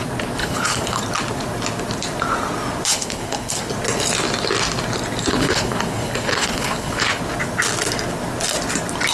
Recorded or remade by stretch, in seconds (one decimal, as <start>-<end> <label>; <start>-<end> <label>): 0.0-0.4 recorded; 0.4-1.0 remade; 1.0-2.9 recorded; 2.9-3.7 remade; 3.7-5.3 recorded; 5.3-7.2 remade; 7.2-9.1 recorded